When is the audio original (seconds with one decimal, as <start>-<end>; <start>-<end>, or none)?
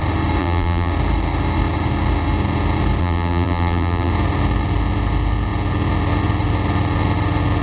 0.0-0.4; 0.9-3.0; 4.1-7.6